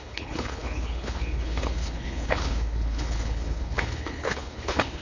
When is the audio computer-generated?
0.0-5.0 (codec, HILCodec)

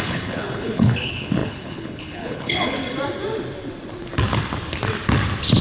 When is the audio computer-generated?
0.0-2.8 (codec, HILCodec)

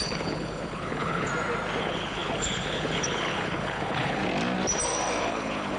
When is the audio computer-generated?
0.0-1.3 (codec, HILCodec); 1.8-4.2; 5.2-5.8

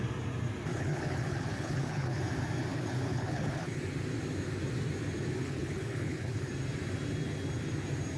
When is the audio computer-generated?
0.7-2.2 (codec, HILCodec); 2.7-3.8; 5.4-6.5

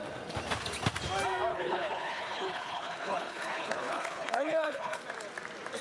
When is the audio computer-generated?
1.5-5.0 (codec, HILCodec)